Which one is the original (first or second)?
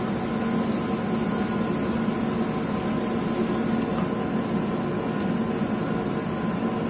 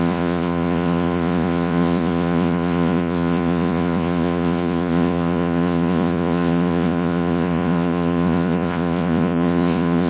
first